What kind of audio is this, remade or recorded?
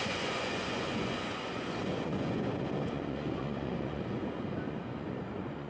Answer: remade